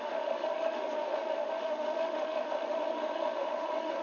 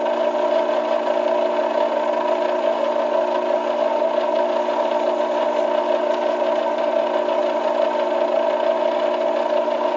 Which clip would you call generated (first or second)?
first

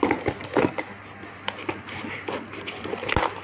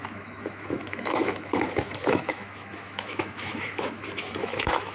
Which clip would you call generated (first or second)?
second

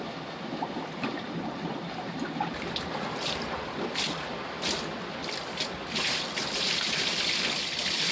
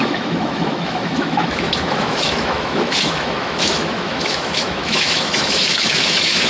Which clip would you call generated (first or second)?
second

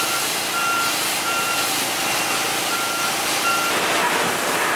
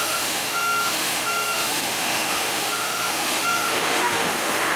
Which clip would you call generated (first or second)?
second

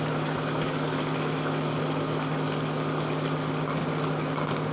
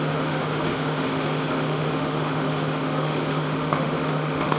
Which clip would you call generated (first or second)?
second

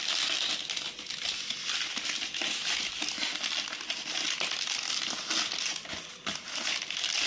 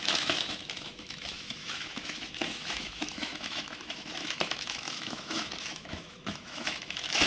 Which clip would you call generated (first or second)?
second